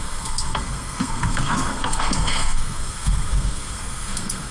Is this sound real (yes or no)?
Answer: no